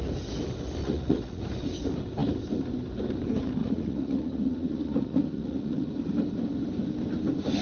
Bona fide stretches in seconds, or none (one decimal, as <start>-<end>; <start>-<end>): 0.0-0.8; 1.4-3.6; 5.9-7.6